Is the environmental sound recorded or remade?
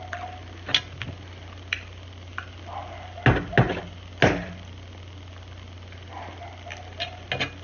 recorded